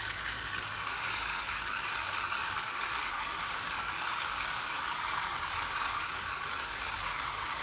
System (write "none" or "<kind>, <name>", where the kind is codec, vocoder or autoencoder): codec, DAC